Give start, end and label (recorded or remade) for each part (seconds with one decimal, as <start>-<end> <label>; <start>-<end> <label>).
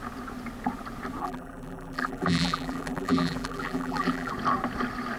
0.0-1.2 recorded; 1.2-4.3 remade; 4.3-5.2 recorded